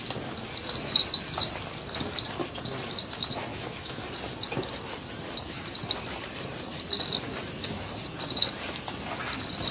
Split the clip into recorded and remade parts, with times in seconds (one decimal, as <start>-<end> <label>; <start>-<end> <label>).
0.0-3.5 recorded; 3.5-4.0 remade; 4.0-9.7 recorded